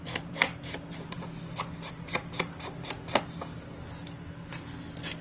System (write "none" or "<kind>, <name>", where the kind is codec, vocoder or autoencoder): none